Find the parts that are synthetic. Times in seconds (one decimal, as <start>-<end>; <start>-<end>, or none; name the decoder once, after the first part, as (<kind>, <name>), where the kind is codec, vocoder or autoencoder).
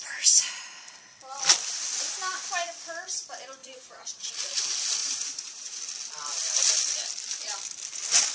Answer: 3.6-4.3 (vocoder, Vocos); 5.0-5.8